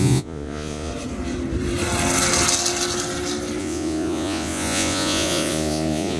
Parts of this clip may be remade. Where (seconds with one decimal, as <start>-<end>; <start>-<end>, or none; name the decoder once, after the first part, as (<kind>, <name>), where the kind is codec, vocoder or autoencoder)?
0.0-0.9 (vocoder, Vocos); 3.6-6.2